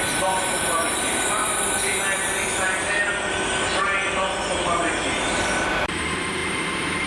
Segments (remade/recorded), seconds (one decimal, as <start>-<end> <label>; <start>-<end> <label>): 0.0-1.4 remade; 1.4-5.7 recorded; 5.7-7.1 remade